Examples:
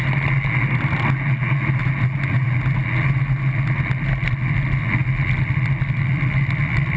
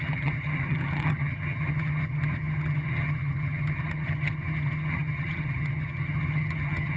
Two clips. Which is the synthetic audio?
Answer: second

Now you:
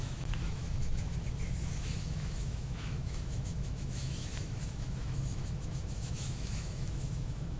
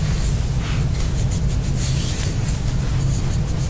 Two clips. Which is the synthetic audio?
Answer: first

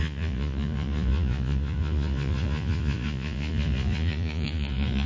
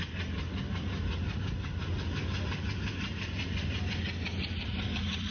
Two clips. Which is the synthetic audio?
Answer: first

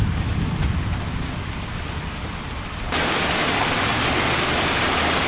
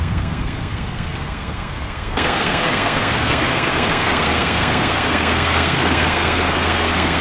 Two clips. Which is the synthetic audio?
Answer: second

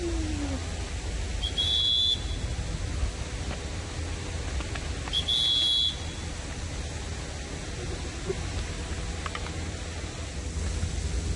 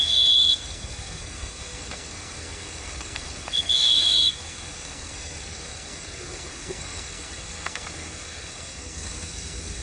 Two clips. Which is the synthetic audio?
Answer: second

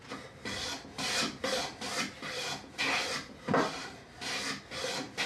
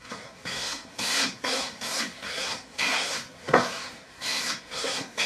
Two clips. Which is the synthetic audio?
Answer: second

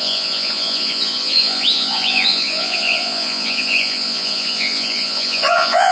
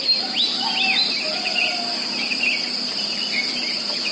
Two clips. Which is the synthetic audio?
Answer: first